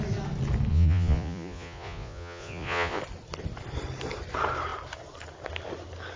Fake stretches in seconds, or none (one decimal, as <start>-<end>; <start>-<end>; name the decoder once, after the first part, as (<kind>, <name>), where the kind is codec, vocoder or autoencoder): 0.7-3.0 (vocoder, Vocos)